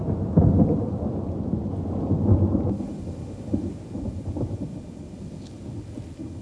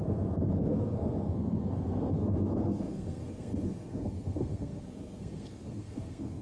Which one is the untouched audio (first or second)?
first